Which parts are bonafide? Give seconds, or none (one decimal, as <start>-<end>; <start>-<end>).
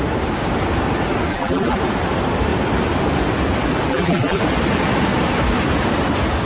0.0-1.3; 1.8-3.9; 4.4-6.5